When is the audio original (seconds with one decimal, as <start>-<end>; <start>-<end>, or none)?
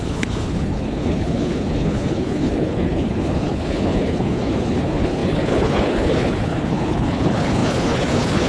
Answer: none